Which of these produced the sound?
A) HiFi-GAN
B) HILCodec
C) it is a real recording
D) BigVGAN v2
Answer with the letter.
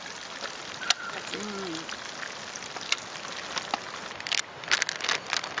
C